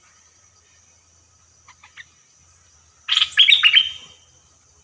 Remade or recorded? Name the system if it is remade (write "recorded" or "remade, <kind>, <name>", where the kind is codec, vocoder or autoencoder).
recorded